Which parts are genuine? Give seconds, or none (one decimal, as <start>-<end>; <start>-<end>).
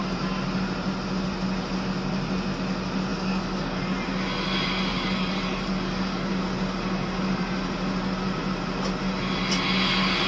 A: 0.0-3.1; 3.8-4.9; 6.3-10.3